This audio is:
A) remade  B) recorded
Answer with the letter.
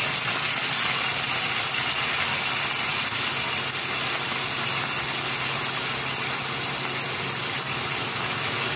B